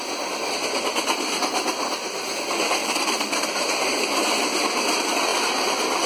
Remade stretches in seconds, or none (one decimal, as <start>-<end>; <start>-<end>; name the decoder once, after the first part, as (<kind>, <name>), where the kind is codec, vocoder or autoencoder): 2.8-4.1 (vocoder, BigVGAN v2)